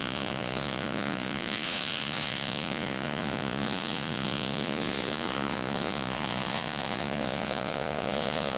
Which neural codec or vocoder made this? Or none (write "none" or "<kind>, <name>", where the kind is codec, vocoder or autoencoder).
vocoder, Vocos